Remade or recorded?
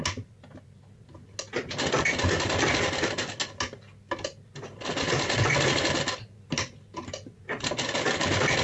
recorded